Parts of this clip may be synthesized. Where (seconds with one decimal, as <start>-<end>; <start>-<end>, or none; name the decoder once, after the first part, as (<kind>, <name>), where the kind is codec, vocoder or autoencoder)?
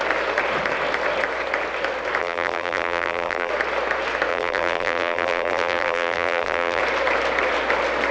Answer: 2.2-3.5 (vocoder, BigVGAN v2); 4.3-6.8